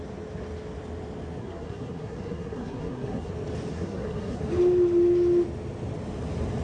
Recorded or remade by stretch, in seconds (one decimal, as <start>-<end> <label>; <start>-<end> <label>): 0.0-1.4 recorded; 1.4-3.3 remade; 3.3-3.7 recorded; 3.7-4.4 remade; 4.4-6.6 recorded